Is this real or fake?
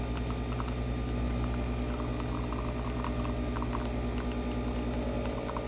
real